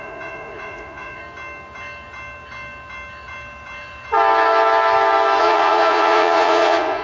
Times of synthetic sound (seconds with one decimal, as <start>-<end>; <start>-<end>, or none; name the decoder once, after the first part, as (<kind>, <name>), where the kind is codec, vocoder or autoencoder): 0.0-1.2 (vocoder, Vocos); 5.4-7.0